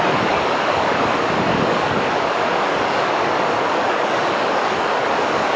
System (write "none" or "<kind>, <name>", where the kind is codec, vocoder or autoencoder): codec, DAC